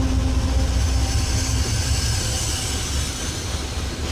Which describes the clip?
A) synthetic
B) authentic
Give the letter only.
B